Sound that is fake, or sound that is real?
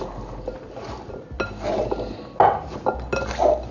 real